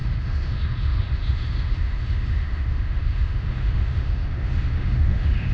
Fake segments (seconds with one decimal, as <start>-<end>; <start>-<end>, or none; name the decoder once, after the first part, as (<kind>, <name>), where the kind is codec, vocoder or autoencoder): 0.0-5.5 (autoencoder, DAC-VAE)